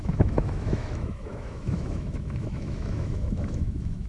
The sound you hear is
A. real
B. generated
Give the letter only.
B